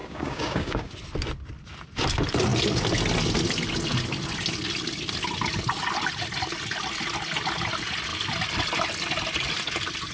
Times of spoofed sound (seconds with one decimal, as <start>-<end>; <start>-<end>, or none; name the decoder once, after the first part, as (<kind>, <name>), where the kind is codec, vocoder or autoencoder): 0.0-0.9 (codec, DAC)